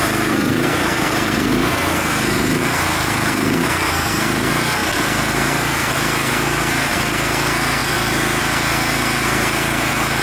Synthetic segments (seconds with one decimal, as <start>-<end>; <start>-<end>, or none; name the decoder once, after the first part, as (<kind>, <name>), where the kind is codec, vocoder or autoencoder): 0.0-10.2 (codec, SNAC)